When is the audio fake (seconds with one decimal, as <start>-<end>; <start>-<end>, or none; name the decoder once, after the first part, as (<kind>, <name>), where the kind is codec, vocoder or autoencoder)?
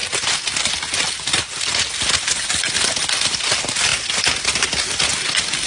none